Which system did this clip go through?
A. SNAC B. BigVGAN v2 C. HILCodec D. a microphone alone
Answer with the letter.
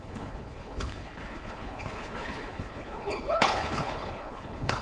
C